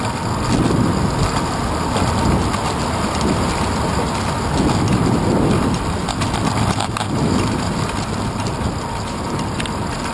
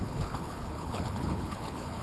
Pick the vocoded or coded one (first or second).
second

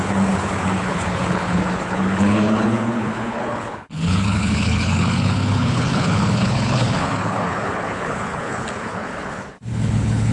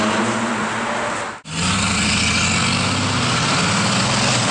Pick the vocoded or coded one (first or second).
first